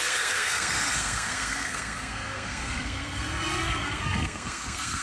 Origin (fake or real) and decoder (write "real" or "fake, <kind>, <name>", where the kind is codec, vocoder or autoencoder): fake, codec, SNAC